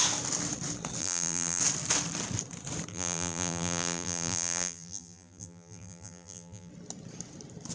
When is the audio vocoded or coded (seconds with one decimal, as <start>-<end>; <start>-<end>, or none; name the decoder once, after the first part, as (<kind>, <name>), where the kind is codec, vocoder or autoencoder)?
1.0-1.6 (vocoder, BigVGAN v2); 2.9-6.7